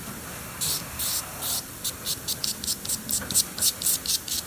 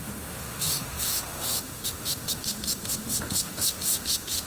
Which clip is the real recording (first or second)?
first